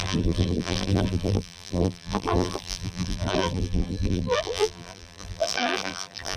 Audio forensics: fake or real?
fake